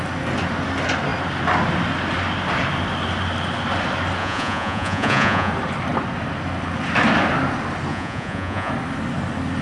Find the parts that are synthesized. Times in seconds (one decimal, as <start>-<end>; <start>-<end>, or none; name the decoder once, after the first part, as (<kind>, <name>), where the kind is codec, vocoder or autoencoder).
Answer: 4.2-5.5 (vocoder, Vocos); 7.9-8.7